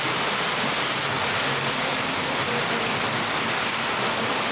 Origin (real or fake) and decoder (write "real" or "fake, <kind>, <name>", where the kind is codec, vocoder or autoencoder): real